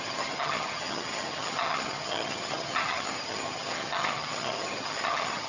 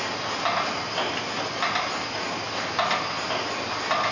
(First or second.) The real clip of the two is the second